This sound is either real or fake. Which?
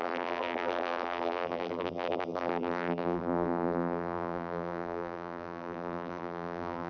fake